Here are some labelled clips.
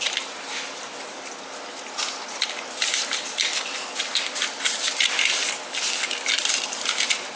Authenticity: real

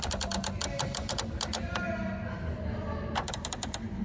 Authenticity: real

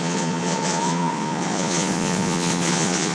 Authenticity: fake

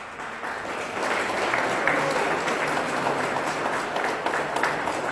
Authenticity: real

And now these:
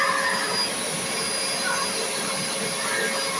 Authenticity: real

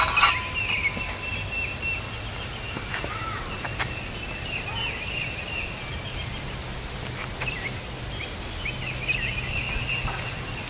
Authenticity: real